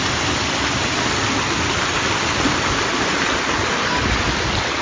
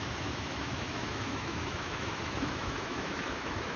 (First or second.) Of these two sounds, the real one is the first